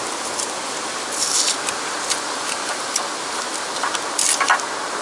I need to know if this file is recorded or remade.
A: recorded